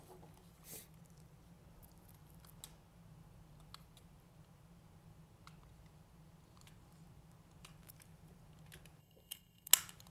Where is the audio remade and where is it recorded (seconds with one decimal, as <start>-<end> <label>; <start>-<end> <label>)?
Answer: 0.0-9.0 recorded; 9.0-9.7 remade; 9.7-10.1 recorded